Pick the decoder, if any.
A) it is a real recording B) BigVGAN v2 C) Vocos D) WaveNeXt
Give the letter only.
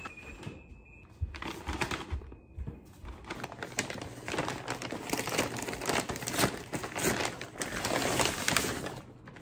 A